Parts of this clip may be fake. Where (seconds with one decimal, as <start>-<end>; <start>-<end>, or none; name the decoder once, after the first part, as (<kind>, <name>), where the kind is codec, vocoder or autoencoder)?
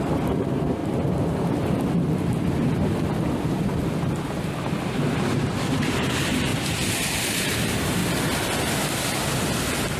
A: 0.0-0.8 (vocoder, BigVGAN v2); 5.2-6.5; 7.1-8.0